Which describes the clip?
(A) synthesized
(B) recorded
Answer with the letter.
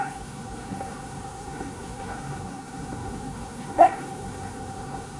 A